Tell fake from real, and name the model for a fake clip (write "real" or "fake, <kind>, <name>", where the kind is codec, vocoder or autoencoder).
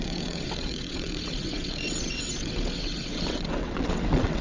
fake, vocoder, WaveNeXt